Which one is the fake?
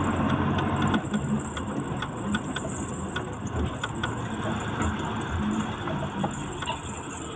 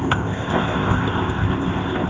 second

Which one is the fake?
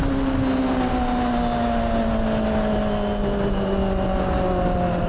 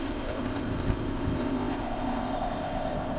second